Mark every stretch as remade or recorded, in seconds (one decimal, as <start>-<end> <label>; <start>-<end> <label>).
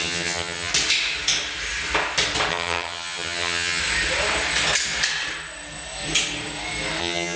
0.0-0.7 remade; 0.7-2.5 recorded; 2.5-3.8 remade; 3.8-7.0 recorded; 7.0-7.4 remade